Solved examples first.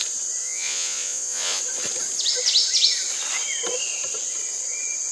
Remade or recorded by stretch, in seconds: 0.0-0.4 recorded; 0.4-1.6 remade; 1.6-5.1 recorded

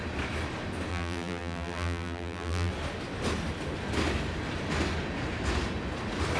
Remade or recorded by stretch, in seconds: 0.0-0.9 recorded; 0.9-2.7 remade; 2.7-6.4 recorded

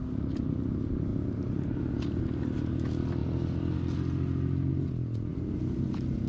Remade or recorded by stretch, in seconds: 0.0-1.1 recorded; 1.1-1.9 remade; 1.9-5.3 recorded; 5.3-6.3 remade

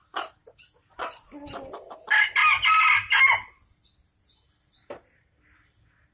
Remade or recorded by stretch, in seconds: 0.0-6.1 recorded

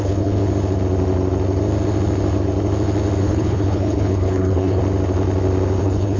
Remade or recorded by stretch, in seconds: 0.0-0.4 remade; 0.4-3.2 recorded; 3.2-4.8 remade; 4.8-5.8 recorded; 5.8-6.2 remade